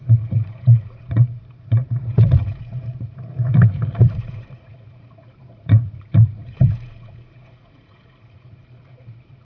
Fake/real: fake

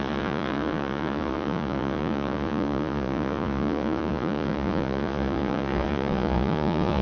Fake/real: fake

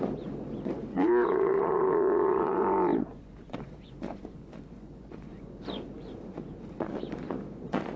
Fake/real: fake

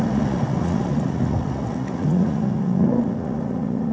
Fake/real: fake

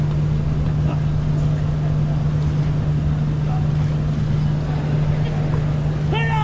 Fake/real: real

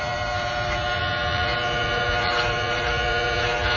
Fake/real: fake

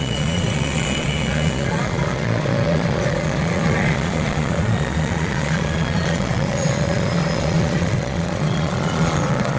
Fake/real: fake